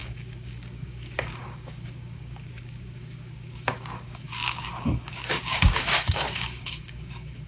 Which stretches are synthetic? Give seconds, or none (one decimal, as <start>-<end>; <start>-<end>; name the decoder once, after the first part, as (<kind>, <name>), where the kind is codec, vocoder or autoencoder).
0.0-7.5 (codec, DAC)